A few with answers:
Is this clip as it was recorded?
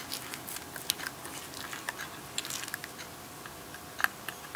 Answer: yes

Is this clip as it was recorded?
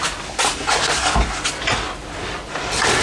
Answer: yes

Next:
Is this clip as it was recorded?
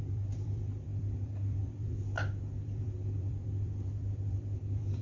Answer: no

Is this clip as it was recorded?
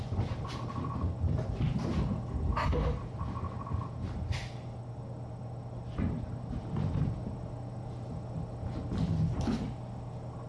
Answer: yes